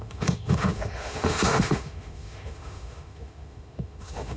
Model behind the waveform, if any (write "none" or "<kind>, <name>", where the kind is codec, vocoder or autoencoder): autoencoder, DAC-VAE